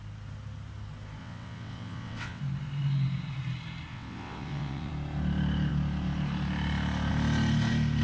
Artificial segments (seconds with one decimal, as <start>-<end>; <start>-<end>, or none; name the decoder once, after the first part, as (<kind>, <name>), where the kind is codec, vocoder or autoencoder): 1.2-2.4 (vocoder, WaveNeXt); 3.9-4.9